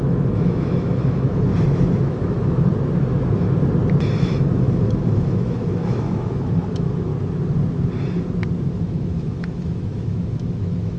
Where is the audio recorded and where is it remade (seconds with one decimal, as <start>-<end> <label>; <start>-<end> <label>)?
0.0-1.5 remade; 1.5-2.0 recorded; 2.0-2.7 remade; 2.7-4.2 recorded; 4.2-7.1 remade; 7.1-8.8 recorded; 8.8-11.0 remade